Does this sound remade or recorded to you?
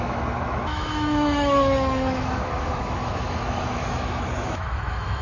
remade